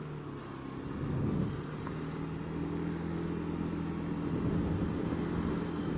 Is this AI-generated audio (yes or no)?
no